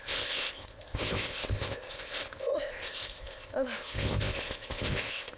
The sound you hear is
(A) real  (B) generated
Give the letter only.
B